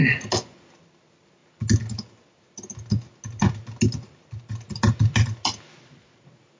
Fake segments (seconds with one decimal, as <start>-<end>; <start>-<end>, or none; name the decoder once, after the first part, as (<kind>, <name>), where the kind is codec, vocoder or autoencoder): none